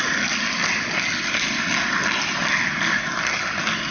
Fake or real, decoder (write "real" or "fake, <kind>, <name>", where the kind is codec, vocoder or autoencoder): real